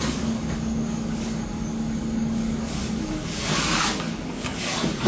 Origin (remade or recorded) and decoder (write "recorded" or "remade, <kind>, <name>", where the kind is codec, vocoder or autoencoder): remade, codec, DAC